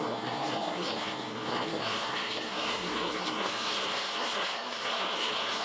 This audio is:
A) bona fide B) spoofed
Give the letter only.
B